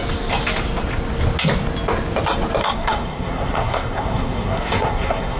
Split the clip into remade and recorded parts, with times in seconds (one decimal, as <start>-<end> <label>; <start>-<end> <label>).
0.0-2.6 recorded; 2.6-5.4 remade